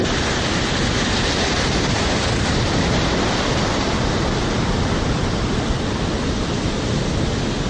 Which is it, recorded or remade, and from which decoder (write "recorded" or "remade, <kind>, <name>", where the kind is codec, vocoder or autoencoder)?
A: recorded